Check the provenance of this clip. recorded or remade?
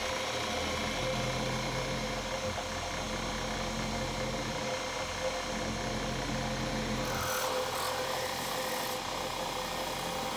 recorded